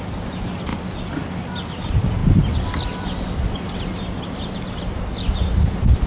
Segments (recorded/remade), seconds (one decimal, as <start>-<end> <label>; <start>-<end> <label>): 0.0-6.1 recorded